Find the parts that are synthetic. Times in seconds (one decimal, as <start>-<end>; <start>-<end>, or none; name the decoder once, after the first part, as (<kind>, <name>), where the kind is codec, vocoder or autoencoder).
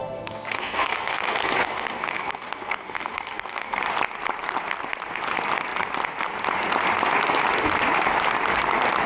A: 0.0-3.8 (codec, SNAC)